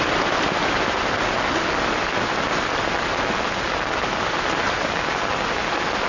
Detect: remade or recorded recorded